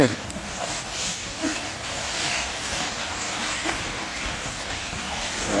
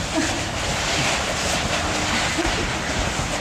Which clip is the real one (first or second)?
second